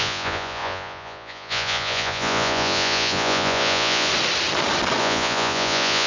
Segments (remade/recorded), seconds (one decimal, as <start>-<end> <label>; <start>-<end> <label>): 0.0-4.1 remade; 4.1-5.0 recorded; 5.0-6.1 remade